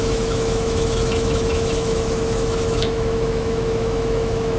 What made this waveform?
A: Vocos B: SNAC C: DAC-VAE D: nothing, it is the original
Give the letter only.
C